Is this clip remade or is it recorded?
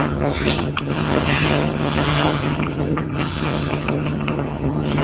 remade